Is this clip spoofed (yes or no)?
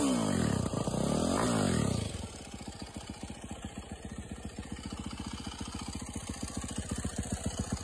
no